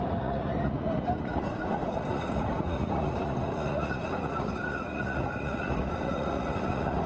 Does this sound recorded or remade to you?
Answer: remade